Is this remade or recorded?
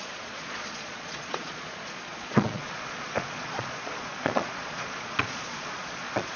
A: remade